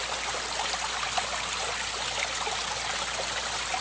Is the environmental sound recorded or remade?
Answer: recorded